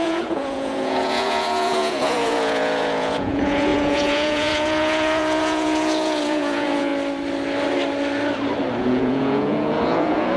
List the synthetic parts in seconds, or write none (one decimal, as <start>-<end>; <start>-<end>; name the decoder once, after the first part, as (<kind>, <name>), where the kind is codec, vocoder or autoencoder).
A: 0.0-6.9 (vocoder, Vocos); 8.8-10.4

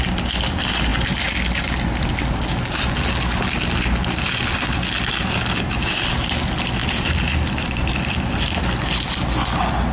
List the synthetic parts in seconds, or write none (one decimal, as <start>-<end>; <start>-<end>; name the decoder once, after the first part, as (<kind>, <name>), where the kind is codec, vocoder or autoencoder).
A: 6.8-8.8 (vocoder, BigVGAN v2)

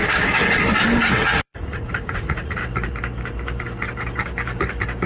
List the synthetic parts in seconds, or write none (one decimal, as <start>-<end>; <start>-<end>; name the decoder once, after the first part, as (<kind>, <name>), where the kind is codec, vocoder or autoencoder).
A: 1.1-2.6 (vocoder, Vocos)

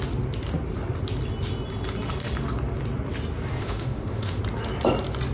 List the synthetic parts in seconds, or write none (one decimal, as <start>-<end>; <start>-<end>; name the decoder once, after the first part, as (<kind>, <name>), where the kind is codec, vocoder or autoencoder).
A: 3.6-4.4 (autoencoder, DAC-VAE)

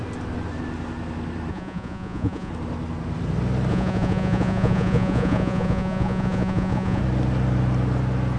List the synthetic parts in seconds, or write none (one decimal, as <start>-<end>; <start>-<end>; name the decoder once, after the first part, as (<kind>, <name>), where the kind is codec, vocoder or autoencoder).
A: 1.5-2.5 (vocoder, Vocos); 3.7-7.0

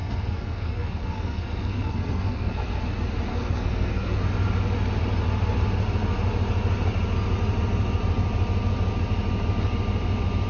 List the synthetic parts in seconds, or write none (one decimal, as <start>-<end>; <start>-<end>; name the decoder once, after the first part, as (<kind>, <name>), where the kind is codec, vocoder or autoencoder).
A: 0.0-2.8 (codec, SNAC); 3.3-4.2

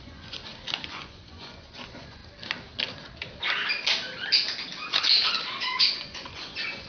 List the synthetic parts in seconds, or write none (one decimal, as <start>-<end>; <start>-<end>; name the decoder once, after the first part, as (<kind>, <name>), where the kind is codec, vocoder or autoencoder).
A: 0.0-0.4 (vocoder, Vocos); 0.9-2.2; 5.6-6.9